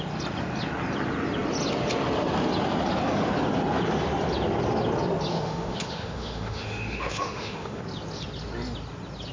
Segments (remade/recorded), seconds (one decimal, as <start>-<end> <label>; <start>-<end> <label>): 0.0-5.3 recorded; 5.3-7.8 remade; 7.8-9.3 recorded